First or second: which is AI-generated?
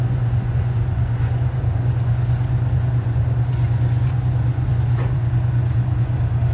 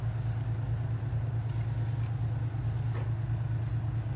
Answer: first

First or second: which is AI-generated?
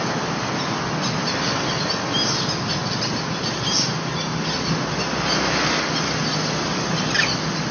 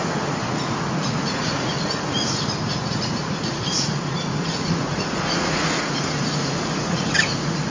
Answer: second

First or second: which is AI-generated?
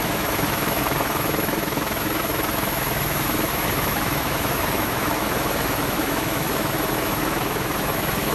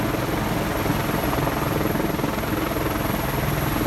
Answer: first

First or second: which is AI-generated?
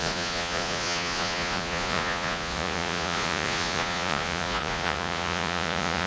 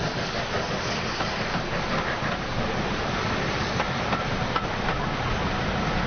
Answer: first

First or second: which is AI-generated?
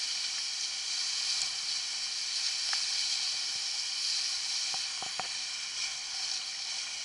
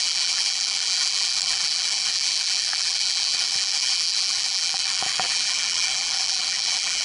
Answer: second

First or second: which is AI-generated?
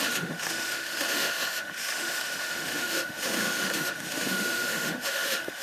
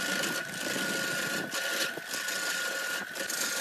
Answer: first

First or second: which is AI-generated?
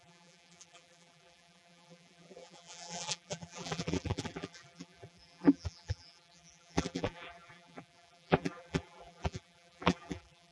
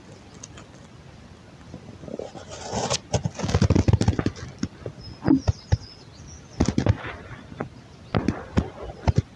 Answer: first